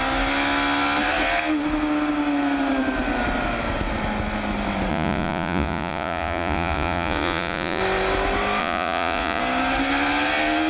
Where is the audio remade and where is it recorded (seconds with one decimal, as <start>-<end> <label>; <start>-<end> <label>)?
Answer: 0.0-4.9 recorded; 4.9-7.8 remade; 7.8-8.6 recorded; 8.6-9.4 remade; 9.4-10.7 recorded